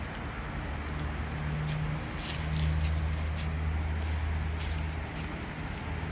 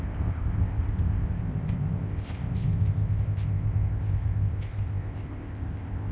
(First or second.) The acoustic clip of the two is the first